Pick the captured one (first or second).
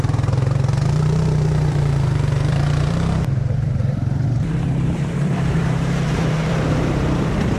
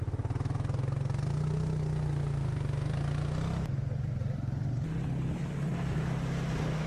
second